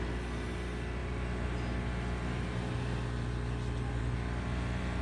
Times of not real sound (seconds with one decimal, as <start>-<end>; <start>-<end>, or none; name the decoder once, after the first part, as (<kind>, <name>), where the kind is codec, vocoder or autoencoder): none